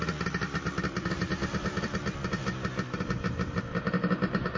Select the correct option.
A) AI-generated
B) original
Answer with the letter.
A